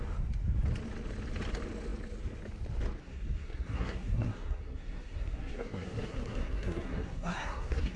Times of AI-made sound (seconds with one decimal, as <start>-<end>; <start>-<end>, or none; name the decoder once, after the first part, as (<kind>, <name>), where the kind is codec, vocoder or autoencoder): 3.0-8.0 (codec, SNAC)